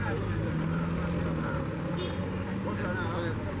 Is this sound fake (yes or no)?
no